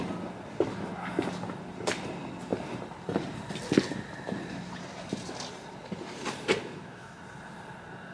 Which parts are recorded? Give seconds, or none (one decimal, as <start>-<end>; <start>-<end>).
0.0-6.6; 7.2-8.1